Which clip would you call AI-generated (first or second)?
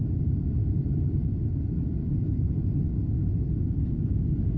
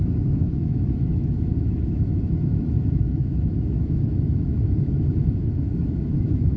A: second